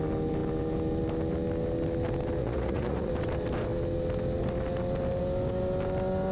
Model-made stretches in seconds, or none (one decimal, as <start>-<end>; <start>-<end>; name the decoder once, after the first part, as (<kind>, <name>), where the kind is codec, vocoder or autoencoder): 2.4-3.1 (vocoder, Vocos)